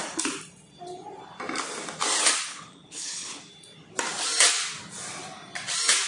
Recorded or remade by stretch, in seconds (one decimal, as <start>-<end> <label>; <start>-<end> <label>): 0.0-2.5 recorded; 2.5-3.4 remade; 3.4-6.1 recorded